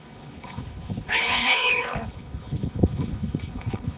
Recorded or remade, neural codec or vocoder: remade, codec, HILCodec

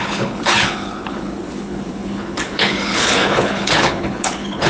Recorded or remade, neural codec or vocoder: remade, codec, HILCodec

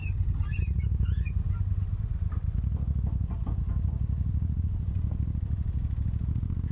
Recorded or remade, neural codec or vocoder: recorded